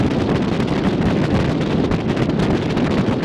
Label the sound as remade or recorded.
recorded